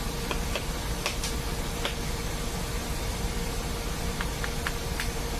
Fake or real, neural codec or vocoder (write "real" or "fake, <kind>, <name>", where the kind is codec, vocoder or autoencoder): real